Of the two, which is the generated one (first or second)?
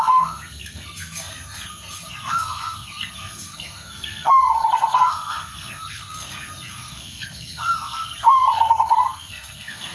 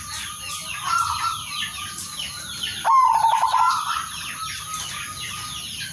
first